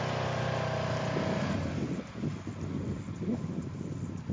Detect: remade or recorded recorded